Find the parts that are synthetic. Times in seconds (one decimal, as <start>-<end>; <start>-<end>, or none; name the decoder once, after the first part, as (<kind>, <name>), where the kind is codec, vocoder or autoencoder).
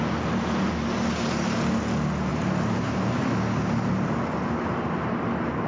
2.3-3.2 (vocoder, BigVGAN v2)